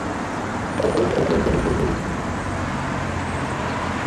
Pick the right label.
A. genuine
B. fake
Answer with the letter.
A